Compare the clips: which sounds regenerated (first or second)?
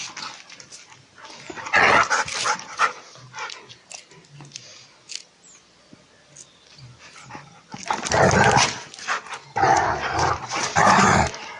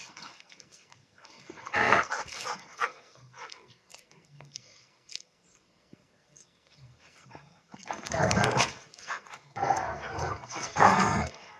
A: second